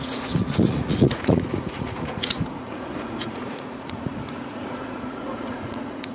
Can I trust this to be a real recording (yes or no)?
no